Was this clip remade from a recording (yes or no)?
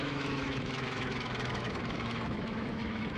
yes